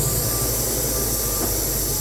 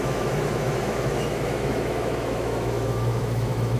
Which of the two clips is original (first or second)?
first